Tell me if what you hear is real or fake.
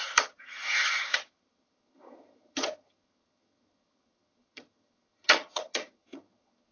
fake